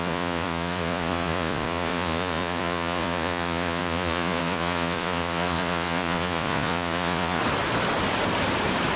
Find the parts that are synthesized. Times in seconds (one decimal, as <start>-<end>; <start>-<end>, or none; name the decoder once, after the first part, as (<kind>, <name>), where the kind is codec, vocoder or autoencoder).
0.0-7.4 (vocoder, Vocos)